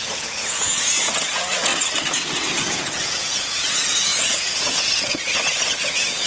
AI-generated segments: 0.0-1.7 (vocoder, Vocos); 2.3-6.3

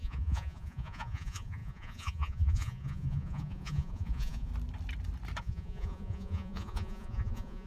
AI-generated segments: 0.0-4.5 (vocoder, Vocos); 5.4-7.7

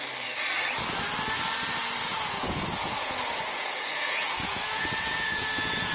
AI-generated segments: 2.1-5.9 (vocoder, Vocos)